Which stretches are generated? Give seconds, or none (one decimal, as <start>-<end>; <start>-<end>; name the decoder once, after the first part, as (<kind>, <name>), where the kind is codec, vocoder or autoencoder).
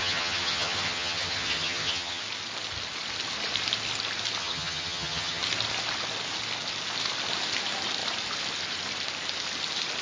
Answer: 0.0-2.2 (vocoder, HiFi-GAN); 4.4-5.4